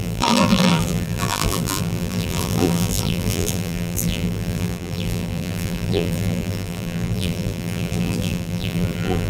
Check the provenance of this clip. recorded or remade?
remade